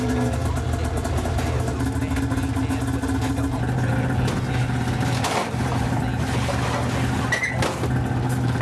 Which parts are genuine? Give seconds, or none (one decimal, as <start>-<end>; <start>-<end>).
0.0-8.6